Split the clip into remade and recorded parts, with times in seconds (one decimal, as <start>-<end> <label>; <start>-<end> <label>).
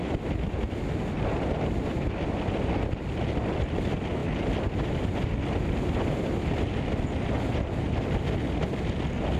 0.0-9.4 recorded